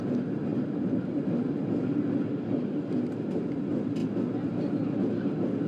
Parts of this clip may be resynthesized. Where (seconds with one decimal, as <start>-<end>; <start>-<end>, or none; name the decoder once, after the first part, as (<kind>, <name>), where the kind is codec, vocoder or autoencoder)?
none